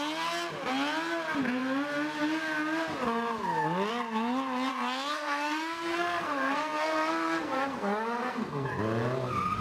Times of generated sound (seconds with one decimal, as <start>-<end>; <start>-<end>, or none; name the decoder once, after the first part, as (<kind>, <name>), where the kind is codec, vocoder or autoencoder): 4.7-8.7 (codec, SNAC)